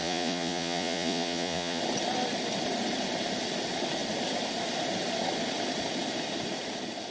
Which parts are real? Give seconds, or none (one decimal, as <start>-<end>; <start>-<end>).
1.8-7.1